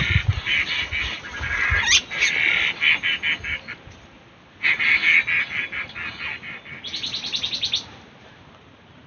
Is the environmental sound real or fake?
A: real